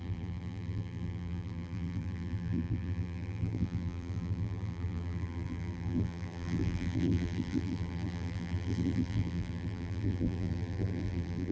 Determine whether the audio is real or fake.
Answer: fake